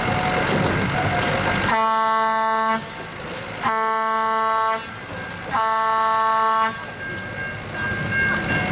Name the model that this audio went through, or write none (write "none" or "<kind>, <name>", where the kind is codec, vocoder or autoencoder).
none